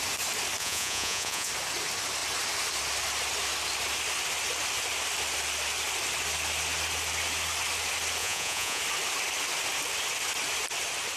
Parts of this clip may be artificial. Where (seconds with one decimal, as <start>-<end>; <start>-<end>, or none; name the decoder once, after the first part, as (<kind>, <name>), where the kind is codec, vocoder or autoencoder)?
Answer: 0.6-1.5 (vocoder, Vocos); 8.2-8.8

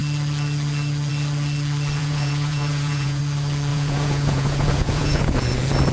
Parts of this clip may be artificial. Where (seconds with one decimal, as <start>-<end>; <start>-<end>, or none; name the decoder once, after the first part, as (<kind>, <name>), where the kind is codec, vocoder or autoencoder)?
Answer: 2.0-3.2 (vocoder, Vocos); 3.7-5.4

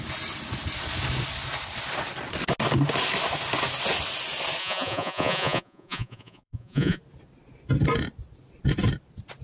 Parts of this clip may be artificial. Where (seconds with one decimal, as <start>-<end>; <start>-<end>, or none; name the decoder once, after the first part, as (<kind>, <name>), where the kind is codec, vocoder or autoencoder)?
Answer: 4.6-7.0 (vocoder, Vocos)

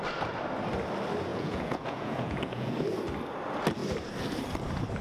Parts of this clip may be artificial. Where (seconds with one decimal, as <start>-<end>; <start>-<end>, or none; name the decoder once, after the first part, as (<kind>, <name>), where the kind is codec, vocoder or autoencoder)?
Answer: 1.3-2.7 (vocoder, Vocos)

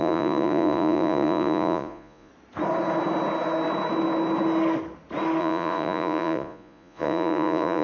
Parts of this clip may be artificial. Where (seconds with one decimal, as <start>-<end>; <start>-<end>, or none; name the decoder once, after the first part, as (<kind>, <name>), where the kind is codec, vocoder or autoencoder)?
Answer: 0.0-2.3 (vocoder, Vocos); 5.4-7.8

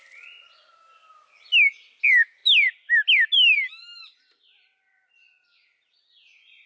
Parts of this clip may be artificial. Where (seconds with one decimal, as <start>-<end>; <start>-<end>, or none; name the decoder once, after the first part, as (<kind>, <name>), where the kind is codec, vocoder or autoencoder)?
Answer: none